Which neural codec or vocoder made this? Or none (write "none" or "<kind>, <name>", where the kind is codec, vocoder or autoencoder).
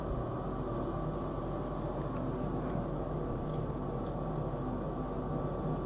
none